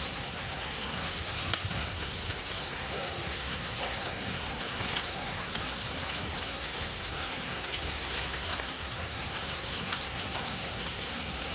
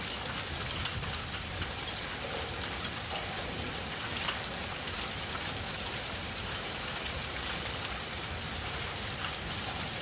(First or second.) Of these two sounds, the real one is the second